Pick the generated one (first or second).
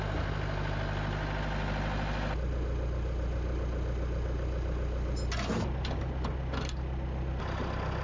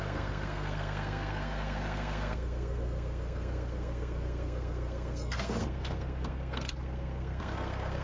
second